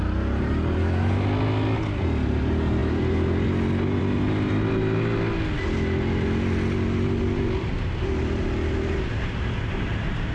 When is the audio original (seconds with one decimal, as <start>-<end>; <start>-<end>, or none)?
0.0-10.3